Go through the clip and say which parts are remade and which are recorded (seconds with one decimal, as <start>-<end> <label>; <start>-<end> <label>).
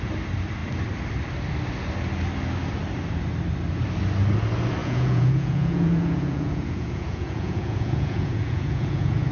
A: 0.0-4.8 recorded; 4.8-9.3 remade